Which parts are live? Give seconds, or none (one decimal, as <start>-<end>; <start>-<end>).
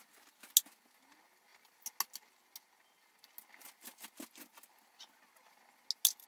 0.0-6.3